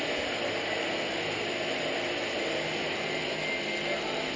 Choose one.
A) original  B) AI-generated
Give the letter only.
A